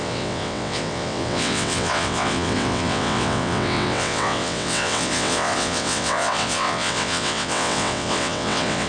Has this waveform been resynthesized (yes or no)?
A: yes